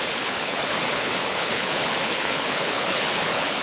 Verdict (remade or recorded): remade